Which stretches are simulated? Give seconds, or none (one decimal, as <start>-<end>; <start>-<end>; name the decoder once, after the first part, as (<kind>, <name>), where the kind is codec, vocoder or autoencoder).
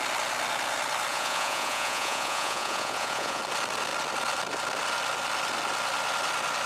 1.1-3.4 (vocoder, Vocos)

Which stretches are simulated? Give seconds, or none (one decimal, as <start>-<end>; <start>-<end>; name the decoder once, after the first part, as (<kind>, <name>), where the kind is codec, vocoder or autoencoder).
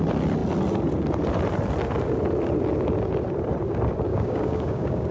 4.1-5.1 (codec, DAC)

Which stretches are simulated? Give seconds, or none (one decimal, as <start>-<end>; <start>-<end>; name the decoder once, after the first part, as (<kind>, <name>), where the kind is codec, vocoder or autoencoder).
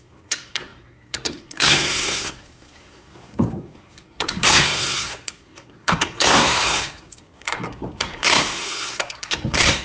0.0-9.8 (codec, SNAC)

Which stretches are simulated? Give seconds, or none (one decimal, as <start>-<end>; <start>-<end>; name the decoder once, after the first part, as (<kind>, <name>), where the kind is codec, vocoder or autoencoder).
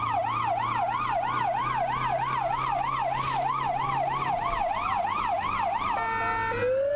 none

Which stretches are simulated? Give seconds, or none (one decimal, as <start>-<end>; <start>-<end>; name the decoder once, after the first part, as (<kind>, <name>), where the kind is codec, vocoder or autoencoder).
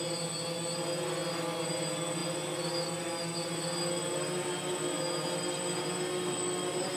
none